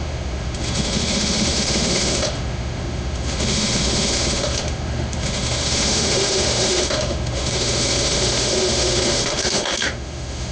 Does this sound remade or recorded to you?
remade